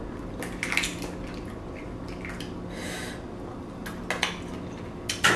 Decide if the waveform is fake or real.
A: real